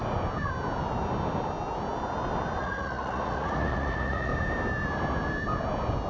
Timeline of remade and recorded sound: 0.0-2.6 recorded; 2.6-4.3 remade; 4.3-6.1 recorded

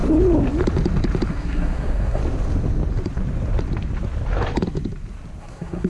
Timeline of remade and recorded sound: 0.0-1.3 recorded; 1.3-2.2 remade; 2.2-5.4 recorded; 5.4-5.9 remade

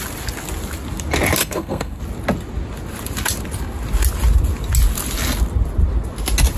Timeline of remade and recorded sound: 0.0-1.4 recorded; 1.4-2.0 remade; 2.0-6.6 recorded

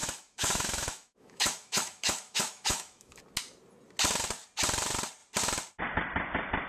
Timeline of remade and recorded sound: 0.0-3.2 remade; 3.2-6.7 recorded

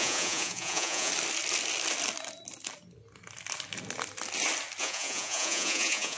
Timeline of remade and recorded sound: 0.0-1.1 remade; 1.1-4.8 recorded; 4.8-6.2 remade

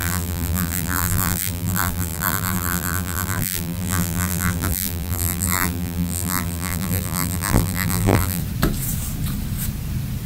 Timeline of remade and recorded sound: 0.0-8.4 remade; 8.4-10.3 recorded

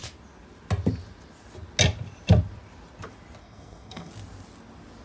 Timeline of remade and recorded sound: 0.0-3.4 recorded; 3.4-4.1 remade; 4.1-5.0 recorded